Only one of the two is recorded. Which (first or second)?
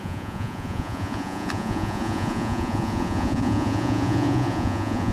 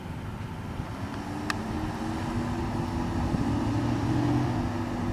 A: second